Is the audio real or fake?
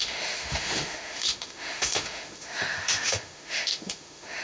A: fake